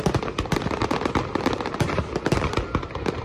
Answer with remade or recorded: recorded